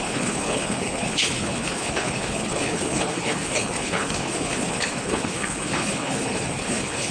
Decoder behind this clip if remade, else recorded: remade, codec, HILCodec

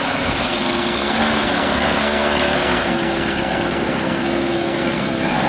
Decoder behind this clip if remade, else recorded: remade, codec, SNAC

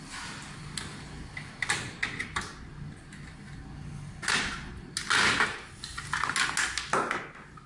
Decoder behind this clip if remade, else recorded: recorded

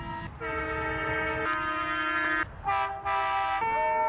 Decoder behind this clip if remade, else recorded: recorded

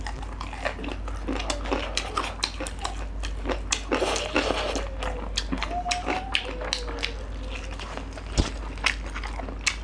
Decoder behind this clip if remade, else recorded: recorded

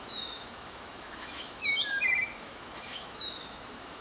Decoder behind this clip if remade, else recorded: remade, autoencoder, DAC-VAE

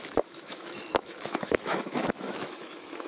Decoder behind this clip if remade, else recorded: remade, autoencoder, DAC-VAE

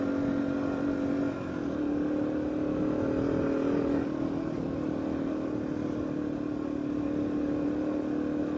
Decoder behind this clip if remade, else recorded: recorded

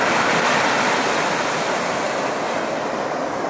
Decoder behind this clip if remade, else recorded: recorded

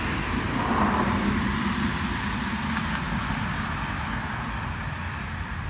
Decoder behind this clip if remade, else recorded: recorded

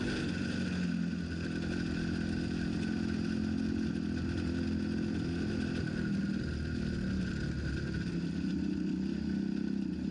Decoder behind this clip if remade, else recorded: recorded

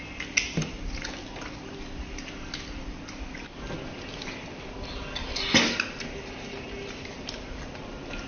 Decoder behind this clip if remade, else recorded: recorded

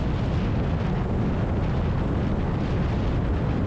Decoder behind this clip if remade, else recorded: recorded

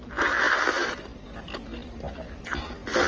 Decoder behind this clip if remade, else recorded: recorded